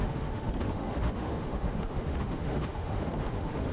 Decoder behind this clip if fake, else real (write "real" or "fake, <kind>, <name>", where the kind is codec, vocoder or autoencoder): fake, autoencoder, DAC-VAE